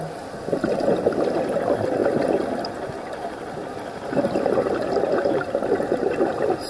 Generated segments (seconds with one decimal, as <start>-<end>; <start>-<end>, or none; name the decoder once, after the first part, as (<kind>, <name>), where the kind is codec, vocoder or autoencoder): none